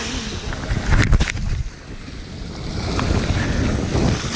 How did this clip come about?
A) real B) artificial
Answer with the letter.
A